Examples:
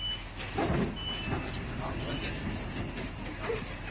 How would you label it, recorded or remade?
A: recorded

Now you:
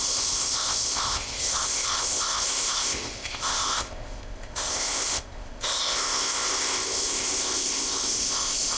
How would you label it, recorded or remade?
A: remade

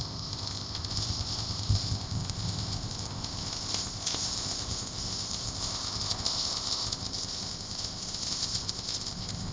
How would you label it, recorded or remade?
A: remade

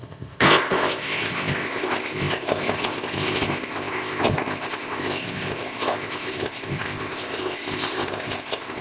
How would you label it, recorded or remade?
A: remade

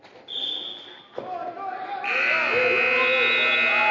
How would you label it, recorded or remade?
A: recorded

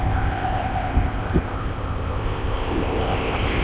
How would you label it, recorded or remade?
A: remade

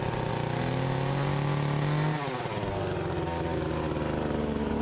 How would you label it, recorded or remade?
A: recorded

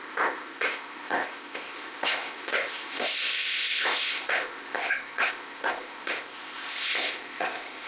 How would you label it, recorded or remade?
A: remade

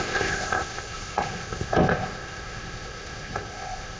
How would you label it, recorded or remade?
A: remade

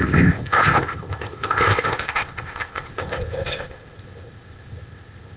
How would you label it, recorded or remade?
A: remade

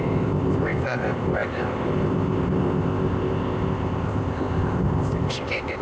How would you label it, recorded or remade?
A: remade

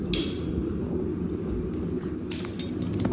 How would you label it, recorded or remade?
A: recorded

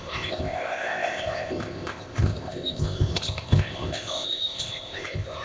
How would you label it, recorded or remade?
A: remade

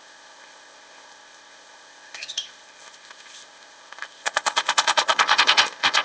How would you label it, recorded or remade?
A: remade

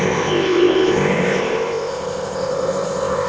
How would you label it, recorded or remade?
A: remade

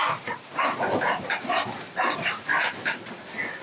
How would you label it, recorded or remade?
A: recorded